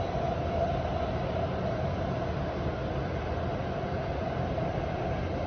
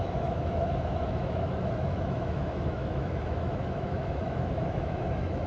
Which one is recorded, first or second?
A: first